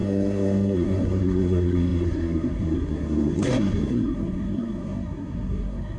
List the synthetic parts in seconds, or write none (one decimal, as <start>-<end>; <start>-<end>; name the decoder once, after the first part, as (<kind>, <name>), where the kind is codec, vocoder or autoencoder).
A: 0.0-6.0 (codec, SNAC)